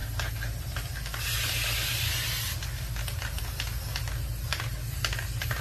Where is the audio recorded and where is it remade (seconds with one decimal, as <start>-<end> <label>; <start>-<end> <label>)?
0.0-5.6 recorded

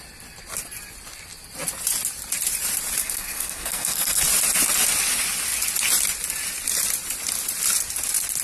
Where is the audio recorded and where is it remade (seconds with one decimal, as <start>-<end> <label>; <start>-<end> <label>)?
0.0-3.0 recorded; 3.0-4.2 remade; 4.2-8.4 recorded

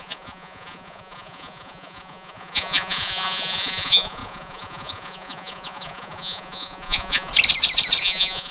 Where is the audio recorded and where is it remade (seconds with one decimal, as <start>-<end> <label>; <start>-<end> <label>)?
0.0-7.3 remade; 7.3-8.0 recorded; 8.0-8.5 remade

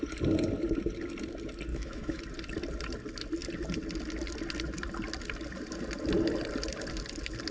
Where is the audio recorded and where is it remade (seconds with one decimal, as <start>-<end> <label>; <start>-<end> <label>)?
0.0-1.7 recorded; 1.7-2.2 remade; 2.2-7.5 recorded

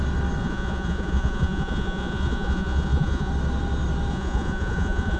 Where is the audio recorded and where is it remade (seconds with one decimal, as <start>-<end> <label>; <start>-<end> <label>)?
0.0-0.4 recorded; 0.4-3.3 remade; 3.3-4.1 recorded; 4.1-5.2 remade

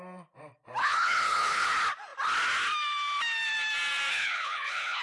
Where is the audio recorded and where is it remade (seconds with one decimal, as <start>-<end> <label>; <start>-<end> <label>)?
0.0-0.8 recorded; 0.8-1.7 remade; 1.7-4.1 recorded; 4.1-5.0 remade

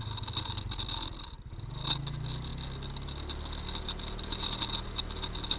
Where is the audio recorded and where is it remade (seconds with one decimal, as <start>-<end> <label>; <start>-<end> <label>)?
0.0-5.6 recorded